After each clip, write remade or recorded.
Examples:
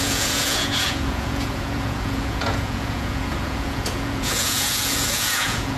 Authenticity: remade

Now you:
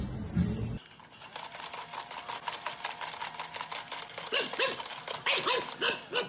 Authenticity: recorded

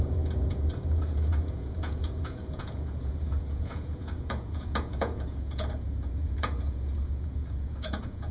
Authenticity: remade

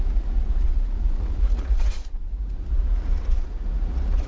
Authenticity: remade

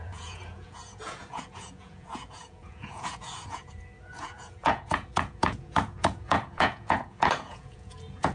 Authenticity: remade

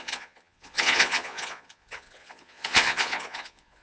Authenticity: remade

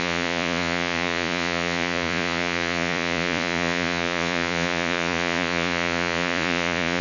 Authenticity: remade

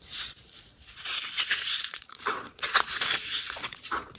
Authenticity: remade